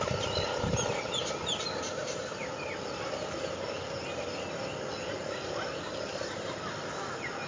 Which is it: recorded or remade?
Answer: recorded